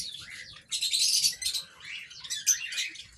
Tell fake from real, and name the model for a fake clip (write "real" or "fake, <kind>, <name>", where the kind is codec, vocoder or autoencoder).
real